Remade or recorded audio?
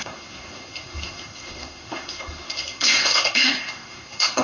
remade